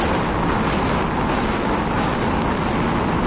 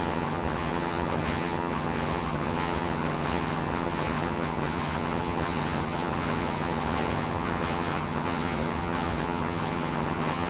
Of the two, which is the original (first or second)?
first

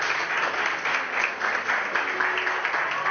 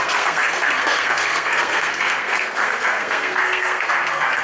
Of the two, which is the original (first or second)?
first